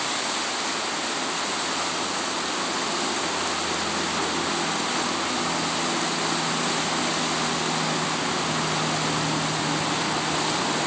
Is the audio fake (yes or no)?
no